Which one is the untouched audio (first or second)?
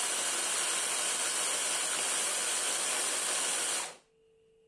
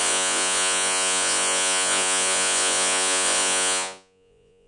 first